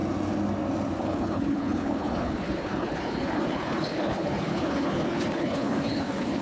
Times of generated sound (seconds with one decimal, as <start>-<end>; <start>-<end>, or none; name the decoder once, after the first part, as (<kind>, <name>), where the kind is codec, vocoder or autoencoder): 1.0-6.4 (codec, HILCodec)